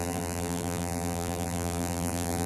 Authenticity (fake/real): fake